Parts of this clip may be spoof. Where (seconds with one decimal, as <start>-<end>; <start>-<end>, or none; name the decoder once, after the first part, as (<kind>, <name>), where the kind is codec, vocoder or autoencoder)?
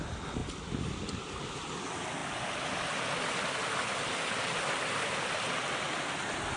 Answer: none